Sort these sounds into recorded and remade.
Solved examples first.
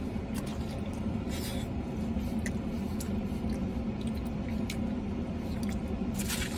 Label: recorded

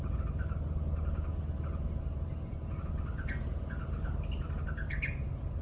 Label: recorded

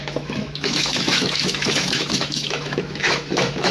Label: remade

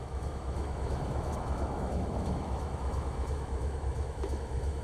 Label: remade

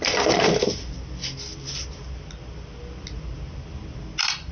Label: recorded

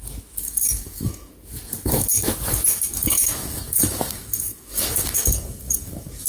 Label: remade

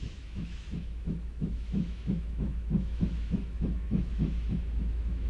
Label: remade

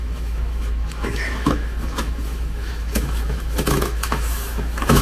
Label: remade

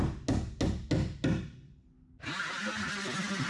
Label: recorded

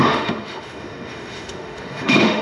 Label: remade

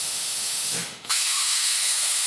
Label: remade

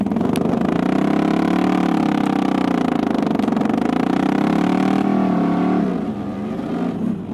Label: recorded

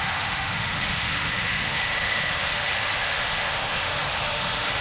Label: remade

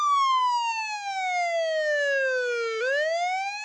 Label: recorded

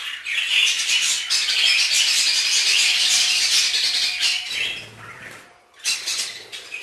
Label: recorded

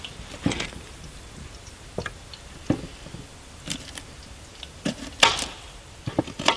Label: recorded